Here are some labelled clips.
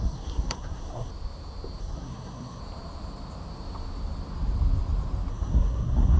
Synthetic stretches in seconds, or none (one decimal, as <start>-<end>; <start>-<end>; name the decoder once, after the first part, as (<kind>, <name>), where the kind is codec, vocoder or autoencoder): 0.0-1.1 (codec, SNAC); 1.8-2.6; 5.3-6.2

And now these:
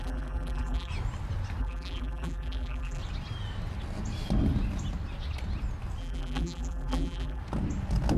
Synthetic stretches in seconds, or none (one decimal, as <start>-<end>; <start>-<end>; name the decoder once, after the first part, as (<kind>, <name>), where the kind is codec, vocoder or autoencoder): 0.0-0.9 (vocoder, BigVGAN v2); 1.6-3.0; 6.0-7.4

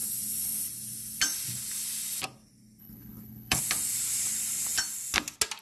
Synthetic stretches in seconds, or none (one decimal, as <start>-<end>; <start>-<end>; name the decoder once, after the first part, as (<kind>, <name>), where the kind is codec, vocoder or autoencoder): 2.8-3.6 (codec, HILCodec)